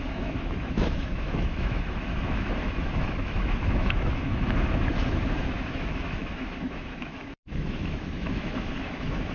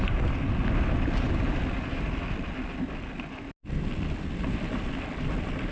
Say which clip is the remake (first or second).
first